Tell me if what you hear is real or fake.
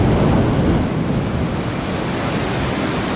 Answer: real